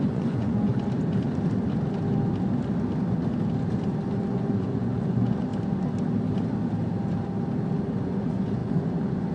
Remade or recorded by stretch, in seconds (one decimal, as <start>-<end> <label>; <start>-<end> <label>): 0.0-0.7 remade; 0.7-4.3 recorded; 4.3-5.5 remade; 5.5-8.0 recorded; 8.0-9.3 remade